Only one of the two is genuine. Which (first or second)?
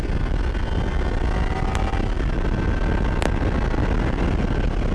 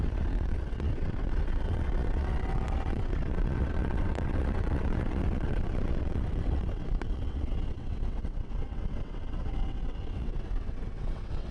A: first